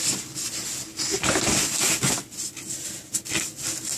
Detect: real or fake real